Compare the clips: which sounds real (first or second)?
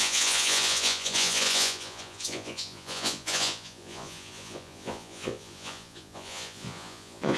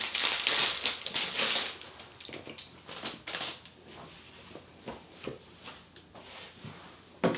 second